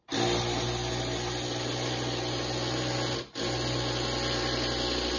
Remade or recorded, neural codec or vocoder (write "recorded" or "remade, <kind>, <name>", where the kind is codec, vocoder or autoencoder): recorded